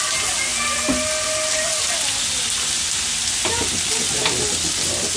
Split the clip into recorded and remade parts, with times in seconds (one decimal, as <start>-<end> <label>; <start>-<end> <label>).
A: 0.0-5.2 recorded